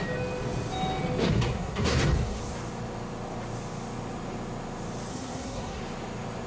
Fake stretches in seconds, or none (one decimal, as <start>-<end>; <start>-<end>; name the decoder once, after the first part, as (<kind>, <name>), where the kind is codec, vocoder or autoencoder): 1.2-2.4 (codec, SNAC); 5.1-5.8